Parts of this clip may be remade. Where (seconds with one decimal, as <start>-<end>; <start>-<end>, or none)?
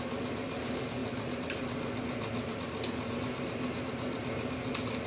none